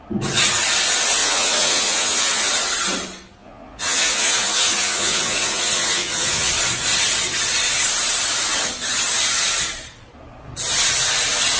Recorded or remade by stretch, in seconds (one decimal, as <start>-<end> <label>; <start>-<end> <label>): 0.0-1.2 recorded; 1.2-2.5 remade; 2.5-3.4 recorded; 3.4-6.5 remade; 6.5-11.6 recorded